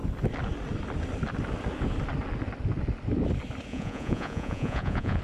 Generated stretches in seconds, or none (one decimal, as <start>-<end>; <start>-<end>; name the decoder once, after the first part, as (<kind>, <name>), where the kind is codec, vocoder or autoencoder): 3.7-5.2 (vocoder, Vocos)